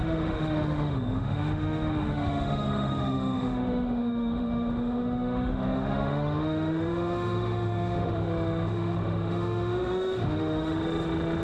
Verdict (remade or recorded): remade